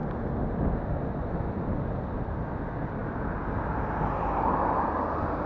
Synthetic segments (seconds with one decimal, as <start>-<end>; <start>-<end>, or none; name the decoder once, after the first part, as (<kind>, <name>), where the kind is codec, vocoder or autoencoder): none